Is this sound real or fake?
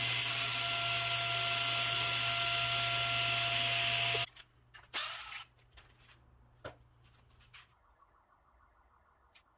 real